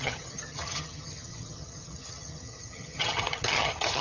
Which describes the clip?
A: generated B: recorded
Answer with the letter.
A